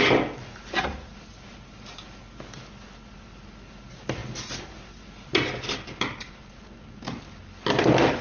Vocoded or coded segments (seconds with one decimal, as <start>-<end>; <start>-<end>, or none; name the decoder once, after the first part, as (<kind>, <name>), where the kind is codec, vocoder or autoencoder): none